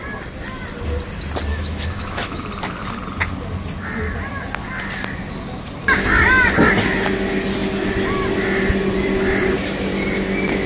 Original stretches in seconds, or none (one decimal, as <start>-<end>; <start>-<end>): 0.0-1.5; 2.4-10.7

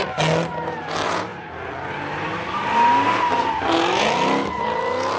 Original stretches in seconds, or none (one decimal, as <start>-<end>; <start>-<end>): 0.0-5.2

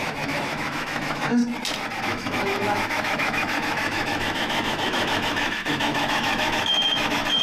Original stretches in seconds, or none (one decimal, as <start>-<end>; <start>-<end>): 1.4-2.0

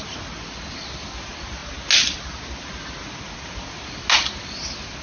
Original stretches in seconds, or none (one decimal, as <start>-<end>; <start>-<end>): 0.0-5.0

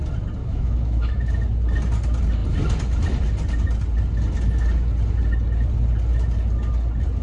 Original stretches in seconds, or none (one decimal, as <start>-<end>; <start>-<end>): 0.0-0.4; 1.3-7.2

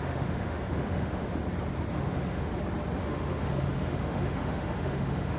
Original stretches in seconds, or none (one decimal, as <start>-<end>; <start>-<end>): 1.4-1.9; 2.5-3.0

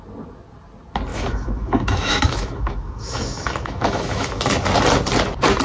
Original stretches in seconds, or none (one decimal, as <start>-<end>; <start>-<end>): 0.0-1.1; 4.5-5.6